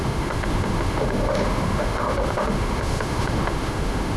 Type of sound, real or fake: fake